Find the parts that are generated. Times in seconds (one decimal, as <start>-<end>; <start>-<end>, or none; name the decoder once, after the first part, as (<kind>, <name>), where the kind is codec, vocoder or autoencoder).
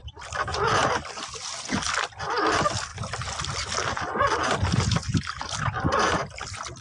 0.0-2.9 (vocoder, BigVGAN v2); 5.4-6.8